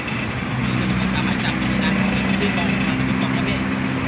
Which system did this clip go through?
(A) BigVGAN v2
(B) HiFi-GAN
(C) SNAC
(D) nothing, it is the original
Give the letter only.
D